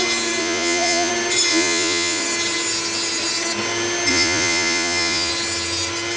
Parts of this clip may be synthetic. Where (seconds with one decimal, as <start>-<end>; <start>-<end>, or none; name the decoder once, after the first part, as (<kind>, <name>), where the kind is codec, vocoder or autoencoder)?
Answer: 0.4-1.1 (vocoder, Vocos); 1.5-2.2; 4.1-5.3